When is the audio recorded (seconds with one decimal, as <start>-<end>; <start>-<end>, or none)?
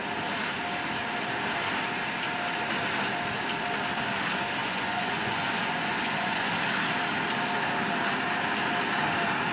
0.0-4.6; 6.5-9.5